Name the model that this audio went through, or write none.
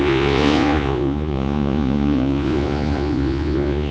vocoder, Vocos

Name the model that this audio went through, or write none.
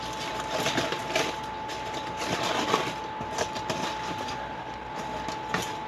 none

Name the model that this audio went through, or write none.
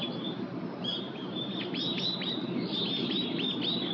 vocoder, BigVGAN v2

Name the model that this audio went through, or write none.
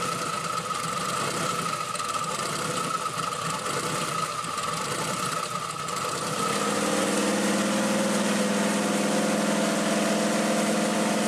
none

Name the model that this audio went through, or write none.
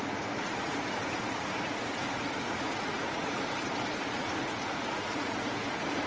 vocoder, Vocos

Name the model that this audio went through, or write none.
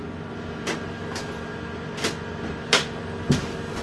none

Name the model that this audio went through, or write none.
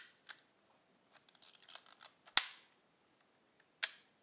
none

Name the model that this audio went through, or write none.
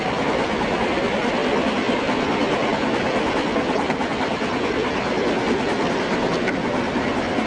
none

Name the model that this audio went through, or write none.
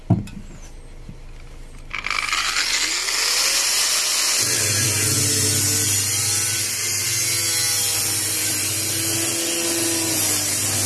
none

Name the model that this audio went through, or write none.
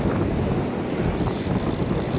none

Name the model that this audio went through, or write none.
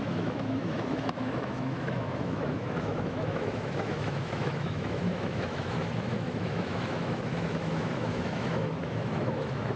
autoencoder, DAC-VAE